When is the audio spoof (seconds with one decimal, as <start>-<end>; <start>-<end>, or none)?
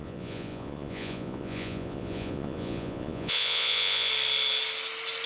0.0-4.1